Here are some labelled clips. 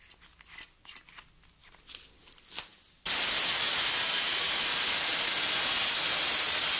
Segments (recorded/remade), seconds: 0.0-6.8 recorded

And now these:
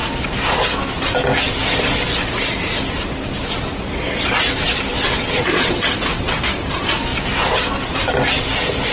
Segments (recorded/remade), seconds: 0.0-4.9 recorded; 4.9-6.4 remade; 6.4-8.9 recorded

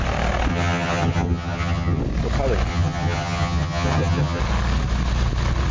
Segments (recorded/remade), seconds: 0.0-0.5 recorded; 0.5-2.0 remade; 2.0-2.7 recorded; 2.7-4.4 remade; 4.4-5.7 recorded

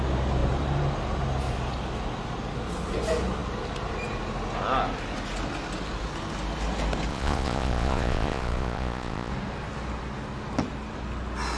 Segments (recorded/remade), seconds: 0.0-7.1 recorded; 7.1-9.3 remade; 9.3-11.6 recorded

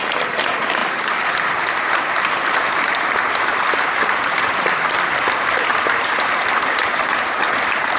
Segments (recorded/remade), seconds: 0.0-8.0 recorded

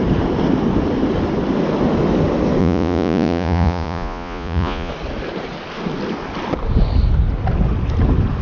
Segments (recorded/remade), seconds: 0.0-2.6 recorded; 2.6-4.9 remade; 4.9-8.4 recorded

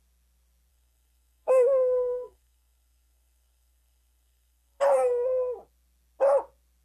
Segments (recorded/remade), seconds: 0.0-0.7 recorded; 0.7-4.8 remade; 4.8-6.8 recorded